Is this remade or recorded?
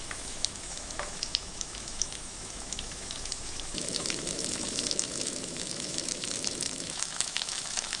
remade